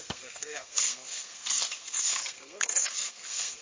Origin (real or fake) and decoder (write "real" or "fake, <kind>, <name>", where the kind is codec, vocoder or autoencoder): fake, codec, SNAC